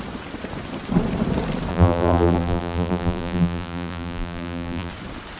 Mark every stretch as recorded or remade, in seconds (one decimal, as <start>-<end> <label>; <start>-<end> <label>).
0.0-1.7 recorded; 1.7-4.9 remade; 4.9-5.4 recorded